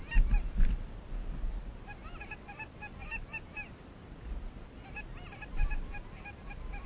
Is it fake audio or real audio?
fake